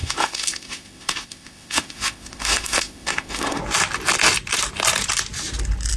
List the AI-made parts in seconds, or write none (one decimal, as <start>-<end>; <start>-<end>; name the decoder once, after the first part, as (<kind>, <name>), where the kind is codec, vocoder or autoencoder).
0.0-3.6 (autoencoder, DAC-VAE)